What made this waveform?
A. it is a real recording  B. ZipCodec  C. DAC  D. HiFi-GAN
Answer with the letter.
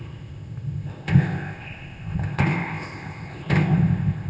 B